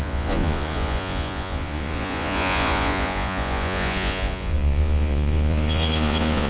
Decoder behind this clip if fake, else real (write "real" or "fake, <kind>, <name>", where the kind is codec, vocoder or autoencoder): fake, vocoder, Vocos